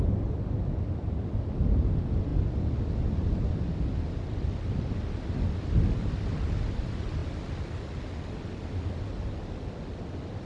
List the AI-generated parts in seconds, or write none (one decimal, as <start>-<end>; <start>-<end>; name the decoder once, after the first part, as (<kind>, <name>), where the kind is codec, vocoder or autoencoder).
none